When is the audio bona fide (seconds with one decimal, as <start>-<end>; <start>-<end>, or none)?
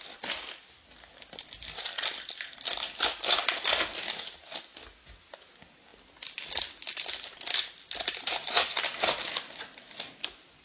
0.0-10.6